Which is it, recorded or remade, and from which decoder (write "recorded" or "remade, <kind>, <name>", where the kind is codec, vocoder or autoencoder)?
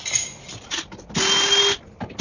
recorded